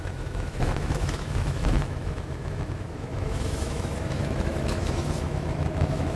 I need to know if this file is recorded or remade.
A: remade